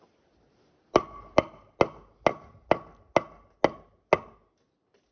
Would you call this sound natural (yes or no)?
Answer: yes